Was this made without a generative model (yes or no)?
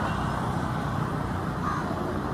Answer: yes